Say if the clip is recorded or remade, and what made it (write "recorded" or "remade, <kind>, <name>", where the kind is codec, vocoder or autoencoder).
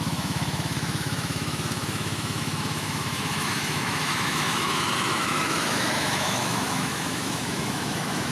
remade, autoencoder, DAC-VAE